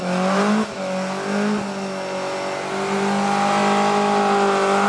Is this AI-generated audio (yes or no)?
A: no